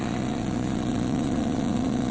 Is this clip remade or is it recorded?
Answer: remade